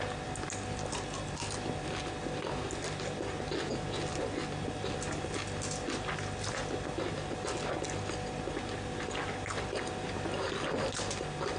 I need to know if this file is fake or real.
real